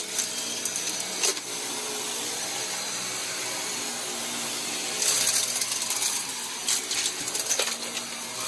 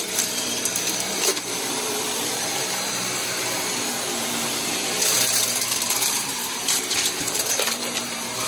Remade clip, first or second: second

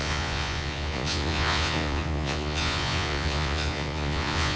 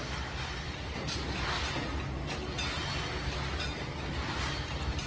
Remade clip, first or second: first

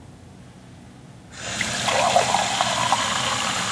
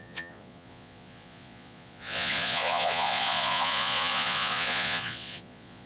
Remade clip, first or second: second